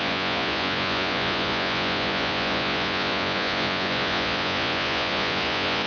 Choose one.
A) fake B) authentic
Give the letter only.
A